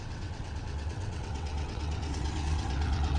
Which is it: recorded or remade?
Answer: remade